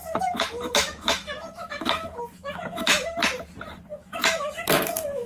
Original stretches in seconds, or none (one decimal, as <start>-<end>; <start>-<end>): 3.2-3.9